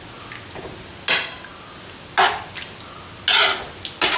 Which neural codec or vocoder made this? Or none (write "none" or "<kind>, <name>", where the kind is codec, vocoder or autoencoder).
none